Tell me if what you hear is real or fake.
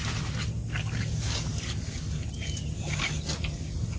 real